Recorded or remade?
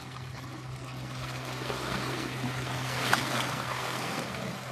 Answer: remade